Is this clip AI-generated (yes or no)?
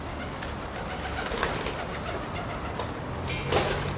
no